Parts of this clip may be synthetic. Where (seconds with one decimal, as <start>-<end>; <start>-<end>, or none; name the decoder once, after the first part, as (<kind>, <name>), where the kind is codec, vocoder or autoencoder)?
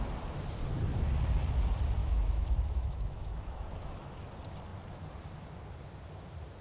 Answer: 2.0-4.3 (autoencoder, DAC-VAE)